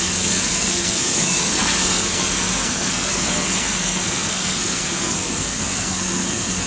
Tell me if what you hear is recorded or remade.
remade